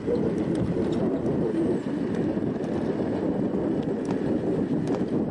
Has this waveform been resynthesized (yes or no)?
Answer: no